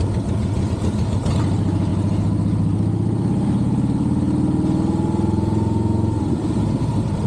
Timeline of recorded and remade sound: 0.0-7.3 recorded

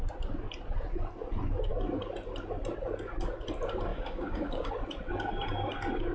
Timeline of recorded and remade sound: 0.0-3.9 recorded; 3.9-4.7 remade; 4.7-6.1 recorded

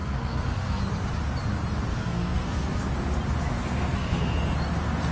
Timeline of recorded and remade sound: 0.0-0.8 remade; 0.8-1.9 recorded; 1.9-2.9 remade; 2.9-3.5 recorded; 3.5-4.2 remade; 4.2-5.1 recorded